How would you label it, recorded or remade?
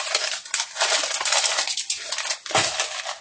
recorded